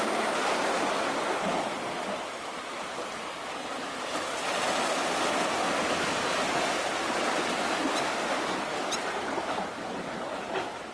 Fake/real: real